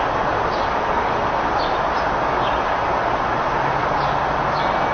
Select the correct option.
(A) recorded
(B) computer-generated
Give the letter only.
A